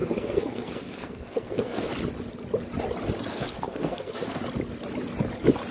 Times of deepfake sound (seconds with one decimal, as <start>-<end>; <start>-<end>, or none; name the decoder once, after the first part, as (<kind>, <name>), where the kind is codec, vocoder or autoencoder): 0.0-1.9 (codec, SNAC); 3.3-4.4